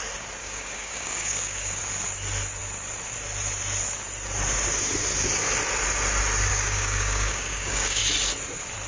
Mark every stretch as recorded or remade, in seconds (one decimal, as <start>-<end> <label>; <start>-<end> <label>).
0.0-0.4 recorded; 0.4-1.8 remade; 1.8-6.5 recorded; 6.5-8.0 remade; 8.0-8.9 recorded